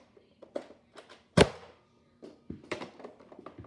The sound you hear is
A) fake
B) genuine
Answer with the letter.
B